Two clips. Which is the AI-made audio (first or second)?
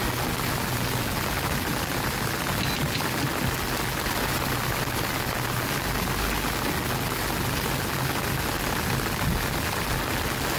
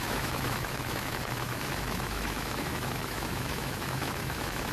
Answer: second